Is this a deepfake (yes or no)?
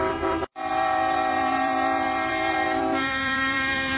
yes